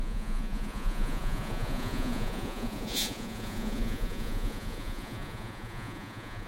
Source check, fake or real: fake